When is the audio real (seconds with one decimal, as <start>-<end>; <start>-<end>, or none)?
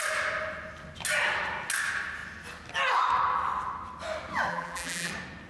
0.0-4.5; 5.1-5.5